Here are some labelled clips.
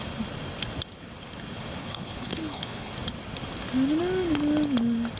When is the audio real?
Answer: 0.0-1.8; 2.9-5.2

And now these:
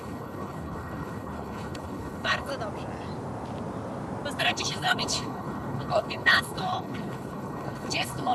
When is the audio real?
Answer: 2.5-4.4

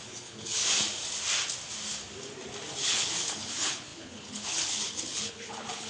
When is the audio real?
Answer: 0.6-2.8

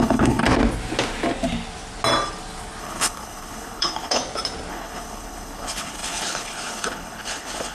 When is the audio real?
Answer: 0.4-2.8; 4.2-4.7